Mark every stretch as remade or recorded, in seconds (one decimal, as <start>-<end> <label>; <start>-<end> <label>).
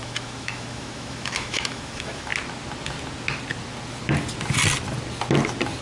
0.0-2.3 remade; 2.3-5.8 recorded